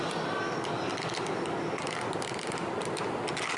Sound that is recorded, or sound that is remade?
recorded